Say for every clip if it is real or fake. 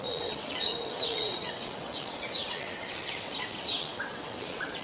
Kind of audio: fake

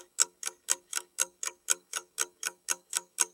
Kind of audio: fake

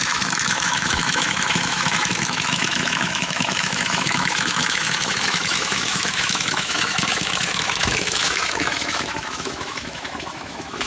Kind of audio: fake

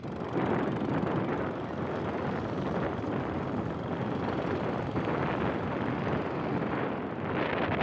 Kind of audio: real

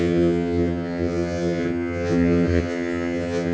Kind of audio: fake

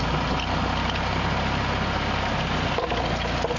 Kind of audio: real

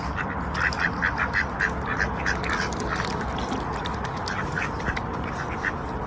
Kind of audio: real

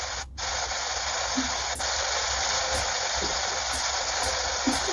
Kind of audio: real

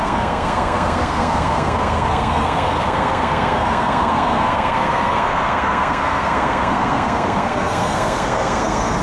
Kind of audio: fake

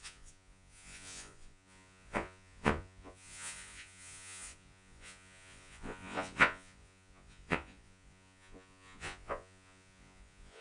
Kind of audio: fake